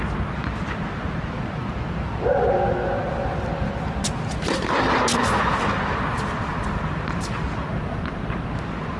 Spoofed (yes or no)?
no